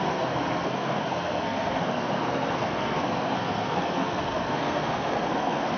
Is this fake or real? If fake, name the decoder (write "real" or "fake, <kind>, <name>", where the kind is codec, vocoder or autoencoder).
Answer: fake, codec, SNAC